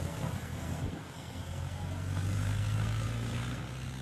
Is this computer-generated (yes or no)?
yes